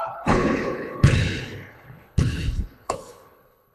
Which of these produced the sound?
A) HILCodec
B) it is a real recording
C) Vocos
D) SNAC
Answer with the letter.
A